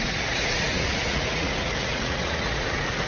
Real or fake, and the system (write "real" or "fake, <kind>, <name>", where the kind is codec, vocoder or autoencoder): fake, vocoder, Vocos